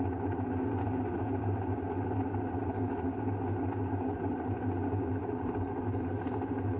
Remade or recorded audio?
recorded